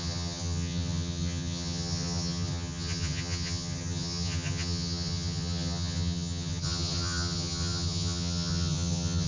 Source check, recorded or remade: remade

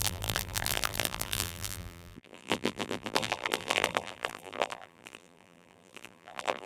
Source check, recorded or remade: remade